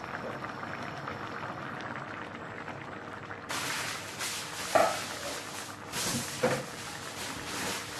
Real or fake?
real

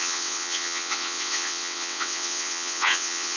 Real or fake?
fake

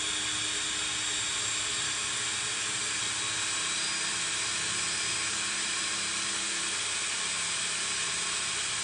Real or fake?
real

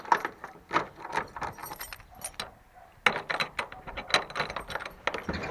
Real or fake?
real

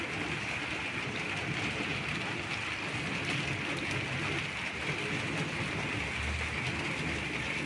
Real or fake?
real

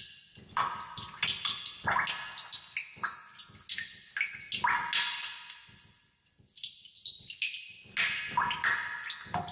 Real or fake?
real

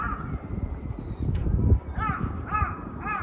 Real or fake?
fake